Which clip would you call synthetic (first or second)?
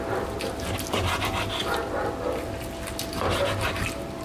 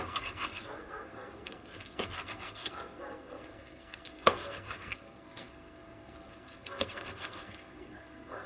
second